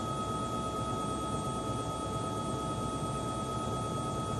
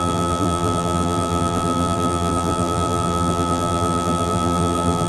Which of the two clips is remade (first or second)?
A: second